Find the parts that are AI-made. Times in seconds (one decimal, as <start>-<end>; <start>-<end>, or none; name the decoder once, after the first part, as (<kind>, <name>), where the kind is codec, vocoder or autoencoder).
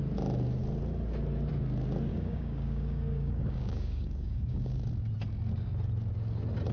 2.1-4.7 (codec, DAC)